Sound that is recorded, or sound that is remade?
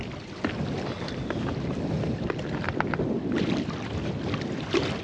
recorded